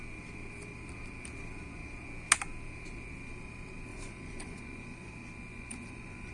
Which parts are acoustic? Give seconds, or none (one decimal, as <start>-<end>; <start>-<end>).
0.0-3.9; 5.1-5.5